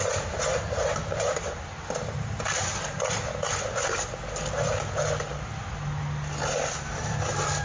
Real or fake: real